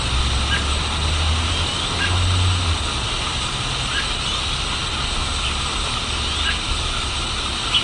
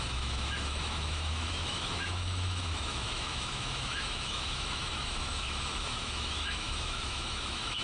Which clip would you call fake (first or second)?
second